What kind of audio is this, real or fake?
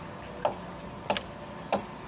real